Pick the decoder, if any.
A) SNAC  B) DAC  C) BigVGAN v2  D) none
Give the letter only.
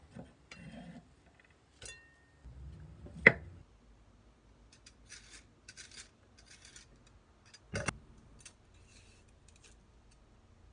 D